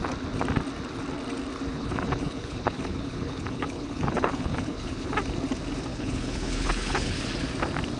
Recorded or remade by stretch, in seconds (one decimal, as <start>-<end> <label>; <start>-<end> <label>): 0.0-1.7 recorded; 1.7-5.1 remade; 5.1-5.9 recorded; 5.9-7.2 remade; 7.2-8.0 recorded